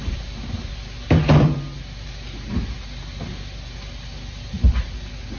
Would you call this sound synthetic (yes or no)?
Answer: no